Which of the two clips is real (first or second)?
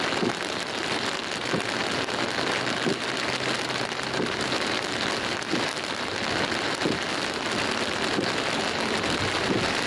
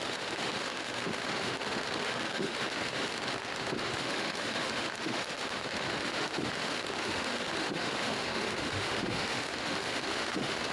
first